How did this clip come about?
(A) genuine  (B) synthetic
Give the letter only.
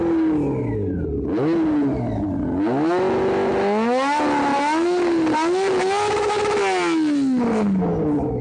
A